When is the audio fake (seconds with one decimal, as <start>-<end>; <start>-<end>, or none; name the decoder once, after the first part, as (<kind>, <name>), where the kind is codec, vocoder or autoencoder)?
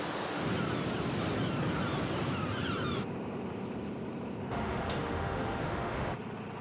4.4-6.1 (autoencoder, DAC-VAE)